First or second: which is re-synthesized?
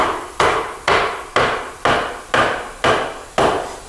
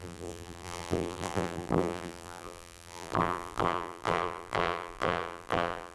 second